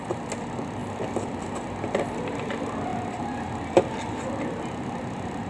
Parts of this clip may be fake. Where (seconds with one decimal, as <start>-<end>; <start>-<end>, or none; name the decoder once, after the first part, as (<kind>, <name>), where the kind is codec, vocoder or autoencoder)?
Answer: none